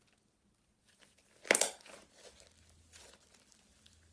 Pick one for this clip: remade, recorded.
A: recorded